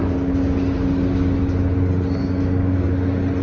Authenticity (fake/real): real